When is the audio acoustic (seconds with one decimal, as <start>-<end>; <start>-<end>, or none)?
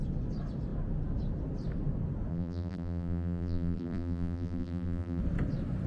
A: 0.0-2.3; 5.2-5.9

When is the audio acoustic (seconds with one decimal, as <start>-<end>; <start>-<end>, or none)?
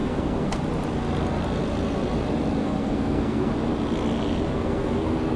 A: 0.6-2.6; 3.5-4.5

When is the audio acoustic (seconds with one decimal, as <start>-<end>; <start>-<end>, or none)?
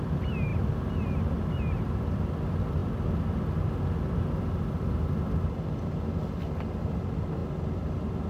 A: 0.0-8.3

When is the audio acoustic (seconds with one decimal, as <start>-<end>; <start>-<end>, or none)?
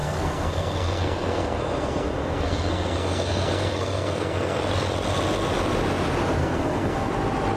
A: 4.6-6.4; 7.1-7.6